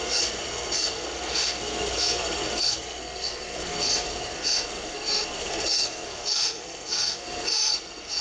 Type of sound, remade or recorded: remade